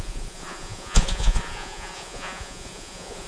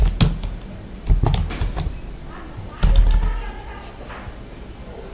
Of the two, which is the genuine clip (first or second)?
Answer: second